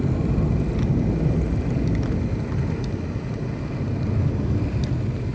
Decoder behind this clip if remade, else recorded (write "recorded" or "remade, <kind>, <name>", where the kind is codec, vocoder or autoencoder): recorded